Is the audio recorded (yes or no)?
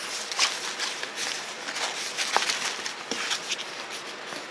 yes